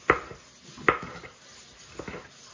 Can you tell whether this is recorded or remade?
recorded